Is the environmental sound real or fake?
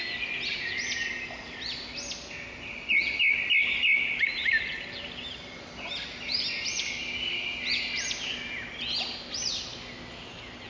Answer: real